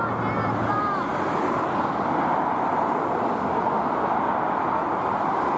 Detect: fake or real real